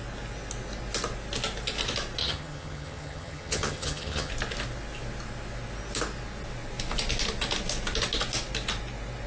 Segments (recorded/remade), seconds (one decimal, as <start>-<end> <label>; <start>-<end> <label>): 0.0-2.2 recorded; 2.2-4.3 remade; 4.3-9.3 recorded